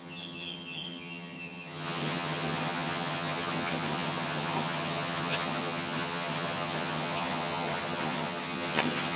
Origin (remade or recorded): remade